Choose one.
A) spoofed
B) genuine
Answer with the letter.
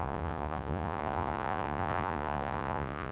A